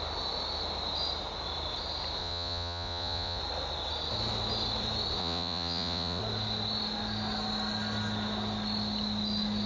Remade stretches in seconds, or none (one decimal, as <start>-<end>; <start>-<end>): 2.2-3.4; 5.2-6.2